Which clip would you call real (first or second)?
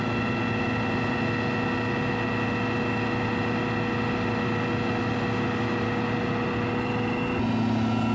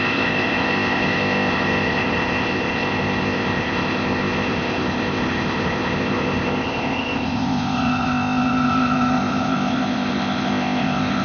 first